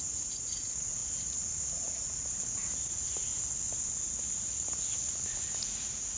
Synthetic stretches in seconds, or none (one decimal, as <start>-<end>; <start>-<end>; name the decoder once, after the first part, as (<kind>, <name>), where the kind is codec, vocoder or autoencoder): 0.0-3.3 (vocoder, Vocos); 4.2-6.2